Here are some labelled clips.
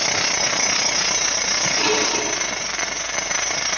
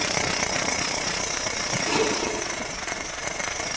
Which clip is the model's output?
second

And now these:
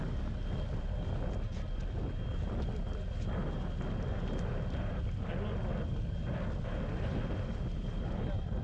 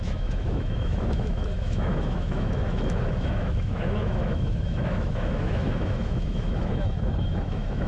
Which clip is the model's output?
second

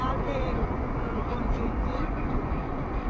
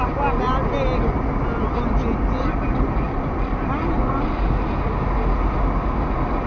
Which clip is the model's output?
first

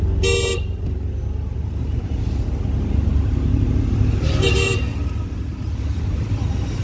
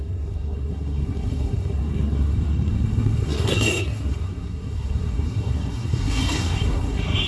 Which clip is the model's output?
second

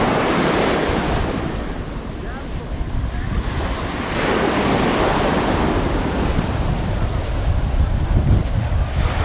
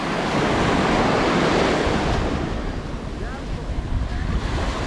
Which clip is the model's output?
first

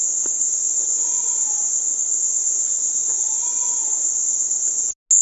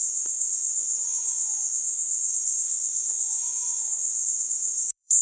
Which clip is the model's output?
second